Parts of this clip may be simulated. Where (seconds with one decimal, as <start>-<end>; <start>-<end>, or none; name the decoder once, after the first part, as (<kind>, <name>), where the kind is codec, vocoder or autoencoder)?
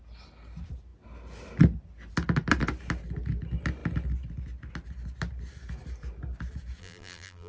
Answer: 6.8-7.5 (vocoder, BigVGAN v2)